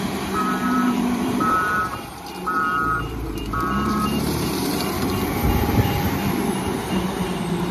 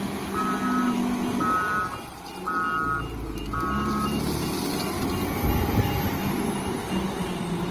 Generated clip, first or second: first